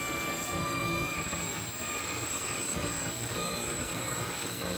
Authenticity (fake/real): fake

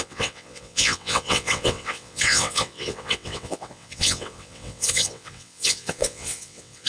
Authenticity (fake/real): fake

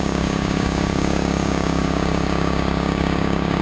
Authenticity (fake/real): fake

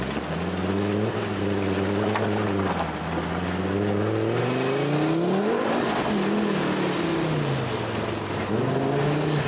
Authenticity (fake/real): real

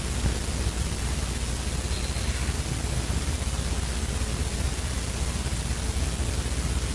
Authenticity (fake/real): real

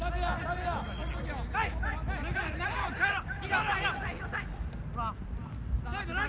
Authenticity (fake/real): real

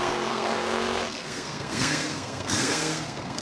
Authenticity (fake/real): fake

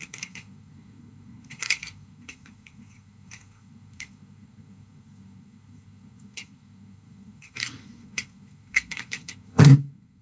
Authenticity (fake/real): fake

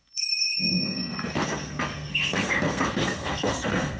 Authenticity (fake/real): fake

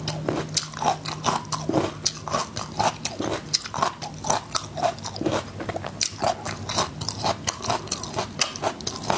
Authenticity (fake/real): real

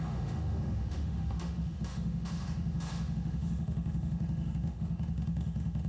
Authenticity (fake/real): fake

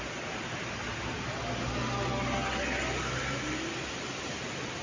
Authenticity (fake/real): real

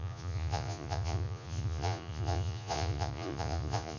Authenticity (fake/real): fake